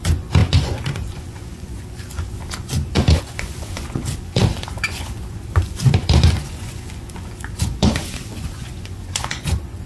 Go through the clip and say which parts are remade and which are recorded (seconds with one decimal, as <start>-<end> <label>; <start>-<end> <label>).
0.0-9.9 remade